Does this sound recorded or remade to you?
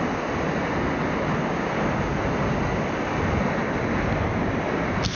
recorded